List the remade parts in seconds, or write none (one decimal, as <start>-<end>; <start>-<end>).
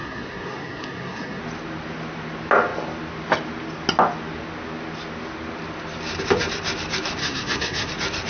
0.0-1.4; 7.2-7.9